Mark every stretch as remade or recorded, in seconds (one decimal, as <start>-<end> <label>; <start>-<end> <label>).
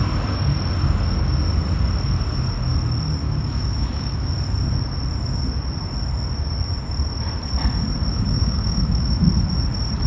0.0-3.2 recorded; 3.2-4.3 remade; 4.3-8.1 recorded; 8.1-9.2 remade; 9.2-10.1 recorded